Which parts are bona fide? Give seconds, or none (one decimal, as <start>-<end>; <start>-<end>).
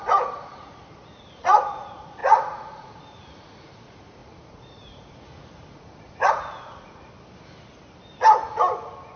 7.1-9.2